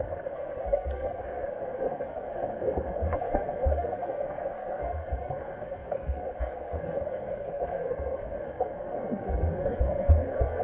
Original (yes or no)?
no